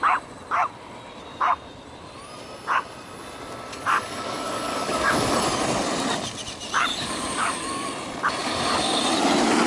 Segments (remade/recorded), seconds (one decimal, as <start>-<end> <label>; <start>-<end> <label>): 0.0-3.7 recorded; 3.7-5.3 remade; 5.3-6.9 recorded; 6.9-7.9 remade; 7.9-8.4 recorded; 8.4-9.0 remade; 9.0-9.7 recorded